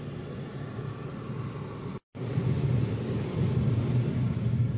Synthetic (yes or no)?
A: no